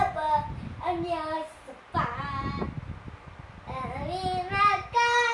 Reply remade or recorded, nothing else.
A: recorded